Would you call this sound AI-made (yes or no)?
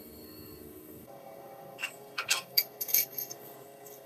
yes